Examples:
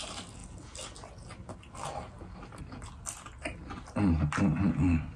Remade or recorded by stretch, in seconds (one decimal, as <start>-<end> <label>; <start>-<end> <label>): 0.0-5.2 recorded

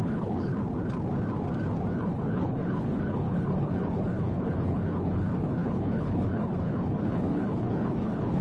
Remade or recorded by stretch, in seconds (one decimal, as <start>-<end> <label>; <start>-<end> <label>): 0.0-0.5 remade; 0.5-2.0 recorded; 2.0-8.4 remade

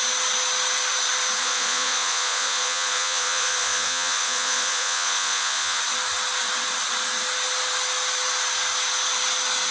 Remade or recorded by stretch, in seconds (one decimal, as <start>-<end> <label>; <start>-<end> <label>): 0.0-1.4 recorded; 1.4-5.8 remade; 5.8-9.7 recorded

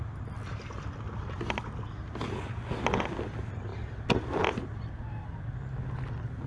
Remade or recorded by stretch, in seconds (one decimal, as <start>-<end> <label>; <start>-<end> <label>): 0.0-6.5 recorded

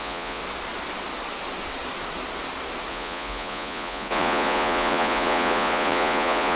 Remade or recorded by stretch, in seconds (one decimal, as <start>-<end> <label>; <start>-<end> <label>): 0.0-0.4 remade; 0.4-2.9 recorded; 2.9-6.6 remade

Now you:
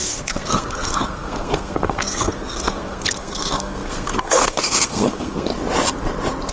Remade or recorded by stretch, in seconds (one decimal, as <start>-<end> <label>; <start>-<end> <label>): 0.0-5.5 remade; 5.5-6.5 recorded

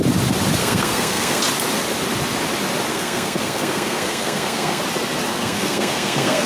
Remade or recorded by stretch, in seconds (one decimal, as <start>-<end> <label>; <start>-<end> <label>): 0.0-0.6 recorded; 0.6-1.4 remade; 1.4-2.9 recorded; 2.9-4.8 remade; 4.8-5.3 recorded; 5.3-6.5 remade

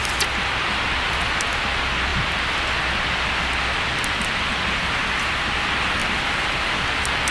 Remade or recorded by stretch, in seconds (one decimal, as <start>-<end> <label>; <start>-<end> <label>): 0.0-7.3 recorded